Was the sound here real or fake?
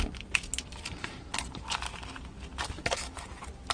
real